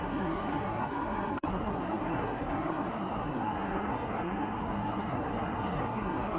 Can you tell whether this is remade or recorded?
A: remade